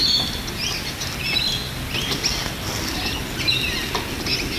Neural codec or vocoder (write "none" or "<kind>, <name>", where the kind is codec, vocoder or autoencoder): none